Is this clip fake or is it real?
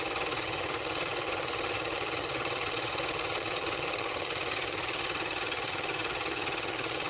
fake